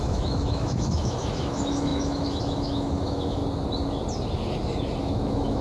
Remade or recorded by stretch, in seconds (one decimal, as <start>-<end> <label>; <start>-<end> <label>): 0.0-3.4 remade; 3.4-5.0 recorded; 5.0-5.6 remade